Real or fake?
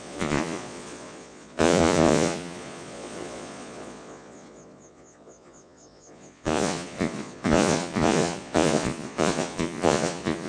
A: fake